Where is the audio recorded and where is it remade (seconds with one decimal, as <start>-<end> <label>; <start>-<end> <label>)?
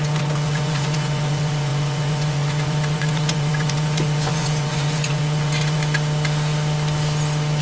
0.0-5.8 remade; 5.8-7.6 recorded